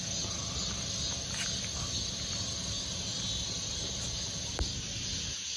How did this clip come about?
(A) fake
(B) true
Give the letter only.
B